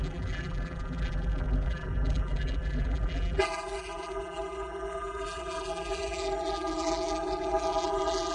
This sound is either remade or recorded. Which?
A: remade